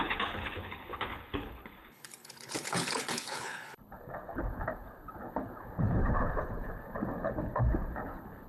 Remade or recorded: remade